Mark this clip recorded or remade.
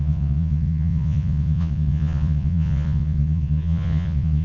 remade